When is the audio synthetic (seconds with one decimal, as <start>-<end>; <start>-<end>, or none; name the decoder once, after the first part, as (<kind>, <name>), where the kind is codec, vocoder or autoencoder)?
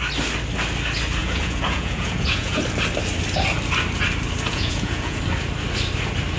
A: 1.2-2.6 (vocoder, Vocos); 4.5-5.2